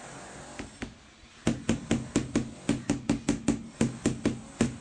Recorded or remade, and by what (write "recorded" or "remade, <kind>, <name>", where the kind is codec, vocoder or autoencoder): recorded